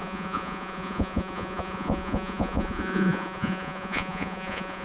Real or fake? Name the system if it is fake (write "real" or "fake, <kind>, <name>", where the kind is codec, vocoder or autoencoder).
fake, vocoder, Vocos